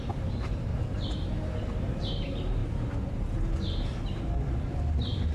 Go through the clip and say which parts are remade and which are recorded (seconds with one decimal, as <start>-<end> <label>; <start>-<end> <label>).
0.0-0.7 remade; 0.7-1.8 recorded; 1.8-2.6 remade; 2.6-4.6 recorded; 4.6-5.3 remade